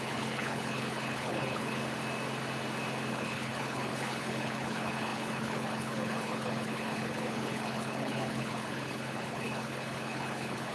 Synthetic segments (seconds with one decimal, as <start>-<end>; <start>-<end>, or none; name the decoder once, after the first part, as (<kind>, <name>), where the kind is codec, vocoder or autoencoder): 0.0-1.8 (codec, HILCodec); 3.1-10.7